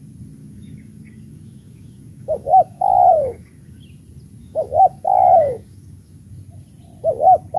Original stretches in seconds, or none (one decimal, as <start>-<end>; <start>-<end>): 0.0-0.4; 3.8-4.4; 6.3-7.6